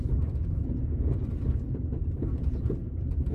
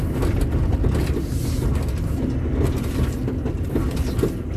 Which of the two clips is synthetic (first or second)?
first